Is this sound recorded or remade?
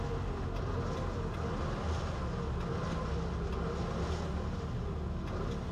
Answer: recorded